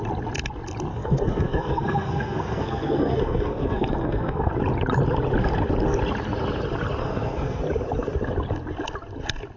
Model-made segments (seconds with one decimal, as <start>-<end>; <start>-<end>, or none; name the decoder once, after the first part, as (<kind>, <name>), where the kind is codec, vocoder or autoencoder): 0.9-4.5 (codec, SNAC); 7.0-7.6